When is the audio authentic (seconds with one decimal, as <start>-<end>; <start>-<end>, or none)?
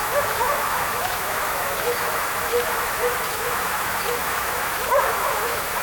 none